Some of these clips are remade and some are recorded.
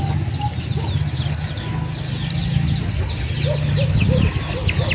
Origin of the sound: recorded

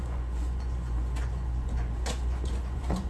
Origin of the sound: remade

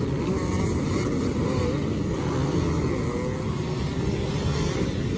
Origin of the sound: recorded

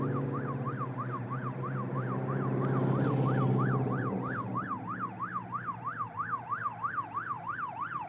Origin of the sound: remade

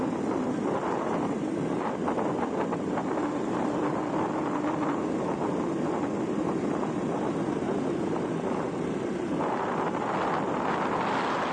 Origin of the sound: recorded